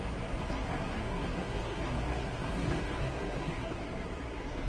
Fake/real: fake